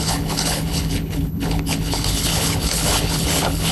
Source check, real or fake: fake